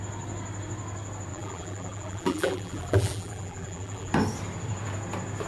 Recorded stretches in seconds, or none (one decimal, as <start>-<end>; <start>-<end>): 0.0-1.3; 4.1-5.5